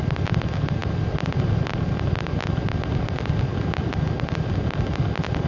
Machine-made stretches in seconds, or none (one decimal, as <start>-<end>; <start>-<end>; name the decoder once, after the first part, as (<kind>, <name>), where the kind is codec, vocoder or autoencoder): 3.5-4.5 (vocoder, BigVGAN v2)